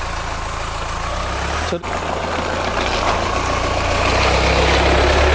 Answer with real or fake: real